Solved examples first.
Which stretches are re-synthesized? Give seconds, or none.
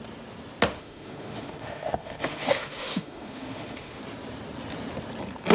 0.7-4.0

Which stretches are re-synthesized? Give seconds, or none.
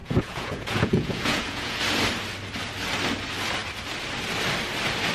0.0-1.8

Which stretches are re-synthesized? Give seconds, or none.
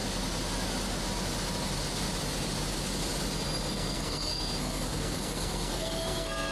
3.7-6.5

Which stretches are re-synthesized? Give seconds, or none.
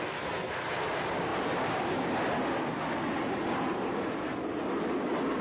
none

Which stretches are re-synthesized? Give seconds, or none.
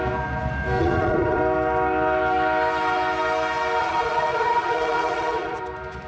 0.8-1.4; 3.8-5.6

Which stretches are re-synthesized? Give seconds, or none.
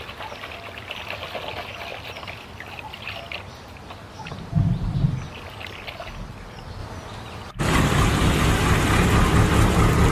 1.9-5.3